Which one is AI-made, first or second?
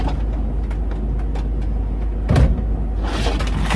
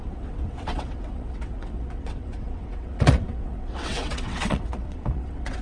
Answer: second